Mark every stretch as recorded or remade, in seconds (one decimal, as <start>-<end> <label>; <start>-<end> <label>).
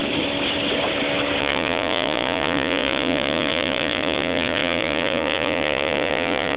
0.0-1.4 recorded; 1.4-6.6 remade